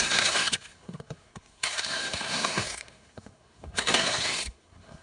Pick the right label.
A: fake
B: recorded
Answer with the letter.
A